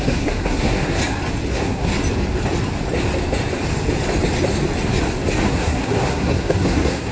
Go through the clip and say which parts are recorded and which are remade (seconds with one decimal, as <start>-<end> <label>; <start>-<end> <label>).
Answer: 0.0-1.0 remade; 1.0-1.5 recorded; 1.5-1.9 remade; 1.9-5.5 recorded; 5.5-7.1 remade

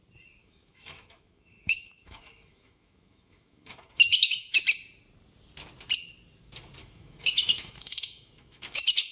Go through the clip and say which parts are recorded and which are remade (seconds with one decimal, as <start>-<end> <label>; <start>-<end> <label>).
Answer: 0.0-0.4 recorded; 0.4-4.6 remade; 4.6-6.8 recorded; 6.8-9.1 remade

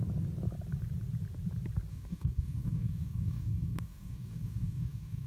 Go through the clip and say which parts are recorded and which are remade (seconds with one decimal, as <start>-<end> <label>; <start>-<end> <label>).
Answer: 0.0-1.9 recorded; 1.9-5.3 remade

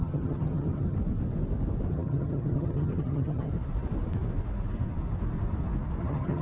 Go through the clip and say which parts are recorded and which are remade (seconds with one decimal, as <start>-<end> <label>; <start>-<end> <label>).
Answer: 0.0-1.0 remade; 1.0-1.9 recorded; 1.9-3.5 remade; 3.5-6.0 recorded; 6.0-6.4 remade

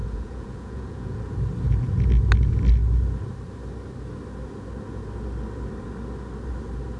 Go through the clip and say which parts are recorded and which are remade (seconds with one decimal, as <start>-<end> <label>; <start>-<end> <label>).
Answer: 0.0-1.2 remade; 1.2-7.0 recorded

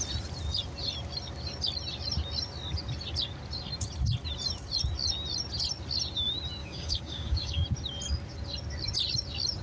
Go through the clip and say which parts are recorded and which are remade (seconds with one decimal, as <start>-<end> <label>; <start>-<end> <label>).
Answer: 0.0-6.6 recorded; 6.6-7.6 remade; 7.6-9.6 recorded